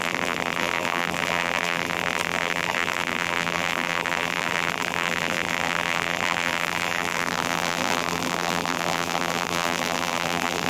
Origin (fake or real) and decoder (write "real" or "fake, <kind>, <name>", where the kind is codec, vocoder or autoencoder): fake, vocoder, BigVGAN v2